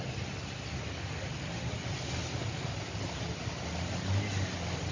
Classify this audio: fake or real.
real